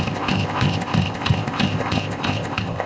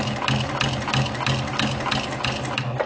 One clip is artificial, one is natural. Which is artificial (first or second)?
first